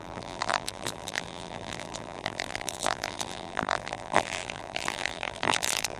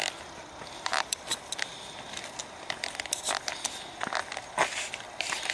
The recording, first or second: second